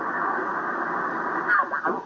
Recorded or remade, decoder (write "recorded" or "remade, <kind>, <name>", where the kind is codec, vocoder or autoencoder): recorded